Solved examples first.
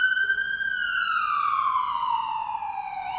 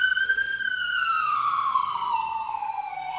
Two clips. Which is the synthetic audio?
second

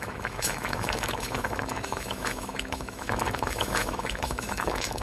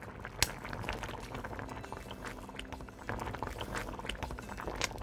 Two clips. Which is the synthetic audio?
first